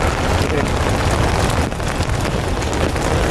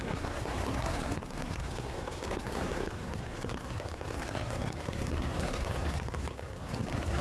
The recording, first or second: first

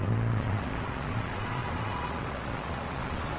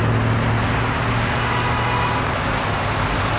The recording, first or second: second